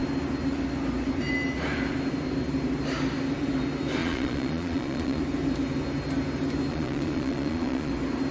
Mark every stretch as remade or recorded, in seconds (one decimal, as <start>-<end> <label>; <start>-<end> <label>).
0.0-4.0 recorded; 4.0-5.2 remade; 5.2-6.7 recorded; 6.7-7.9 remade; 7.9-8.3 recorded